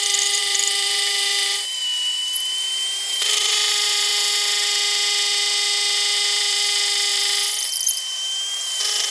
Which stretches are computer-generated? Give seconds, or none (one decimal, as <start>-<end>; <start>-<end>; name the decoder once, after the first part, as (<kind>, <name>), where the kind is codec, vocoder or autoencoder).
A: 0.0-4.1 (vocoder, BigVGAN v2); 6.4-9.1